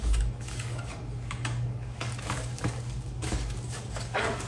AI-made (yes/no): yes